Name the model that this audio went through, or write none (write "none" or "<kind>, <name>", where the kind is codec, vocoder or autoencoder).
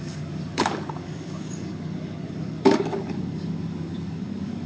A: codec, DAC